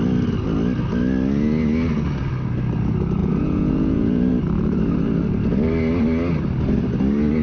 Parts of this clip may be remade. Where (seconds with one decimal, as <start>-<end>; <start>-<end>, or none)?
3.2-4.3